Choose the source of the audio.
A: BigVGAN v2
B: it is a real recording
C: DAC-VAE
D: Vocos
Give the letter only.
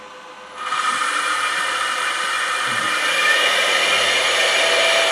B